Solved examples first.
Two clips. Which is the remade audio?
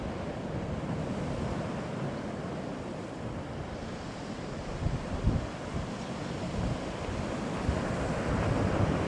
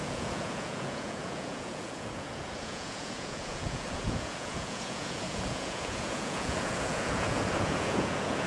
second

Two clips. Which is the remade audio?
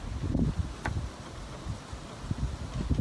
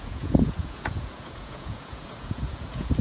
second